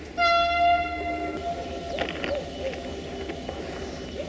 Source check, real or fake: real